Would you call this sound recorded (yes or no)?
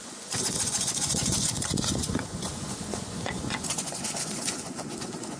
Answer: no